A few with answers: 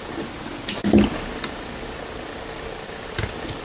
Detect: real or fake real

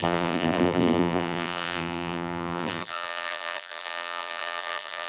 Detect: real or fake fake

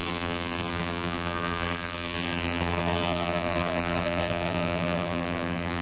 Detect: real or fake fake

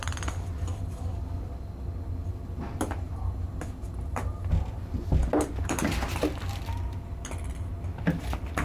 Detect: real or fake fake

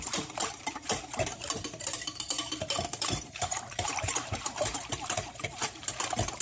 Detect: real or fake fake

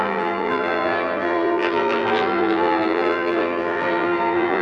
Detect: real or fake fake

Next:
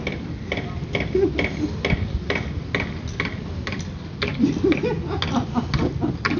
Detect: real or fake real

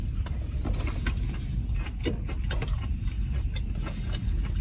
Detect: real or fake real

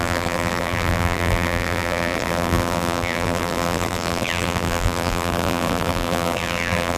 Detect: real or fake fake